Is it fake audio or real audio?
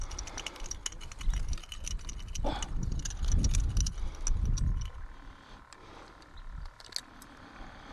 real